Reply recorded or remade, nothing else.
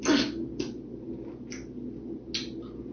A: recorded